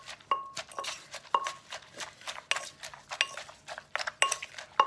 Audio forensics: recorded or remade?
recorded